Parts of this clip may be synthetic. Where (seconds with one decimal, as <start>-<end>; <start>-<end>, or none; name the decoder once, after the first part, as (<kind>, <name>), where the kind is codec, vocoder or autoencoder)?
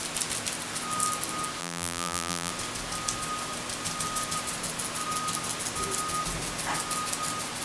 1.6-2.5 (vocoder, BigVGAN v2)